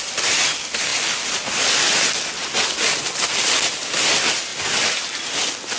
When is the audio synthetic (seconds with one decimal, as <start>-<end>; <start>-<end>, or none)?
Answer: none